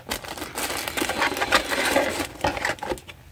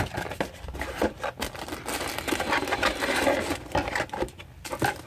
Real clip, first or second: second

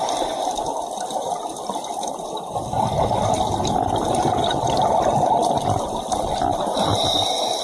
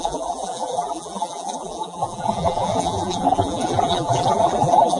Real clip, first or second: first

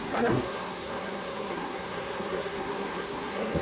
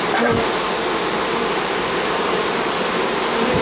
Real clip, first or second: second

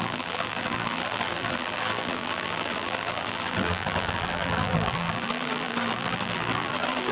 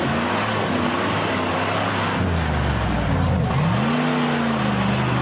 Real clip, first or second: second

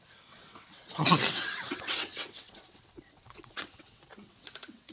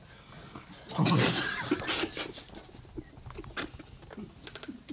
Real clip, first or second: second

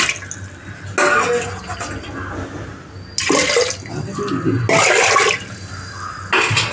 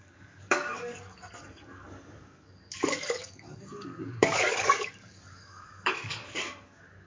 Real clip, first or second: first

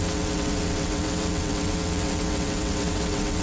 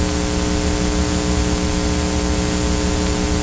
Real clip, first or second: second